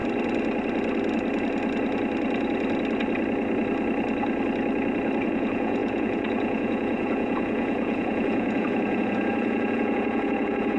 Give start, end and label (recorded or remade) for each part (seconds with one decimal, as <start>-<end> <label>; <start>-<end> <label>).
0.0-5.3 recorded; 5.3-10.8 remade